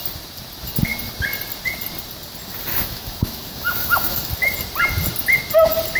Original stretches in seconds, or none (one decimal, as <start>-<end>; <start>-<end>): 0.0-2.7; 4.3-6.0